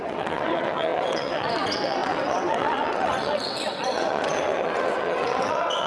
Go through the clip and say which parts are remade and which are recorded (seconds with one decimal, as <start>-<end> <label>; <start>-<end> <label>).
0.0-5.9 remade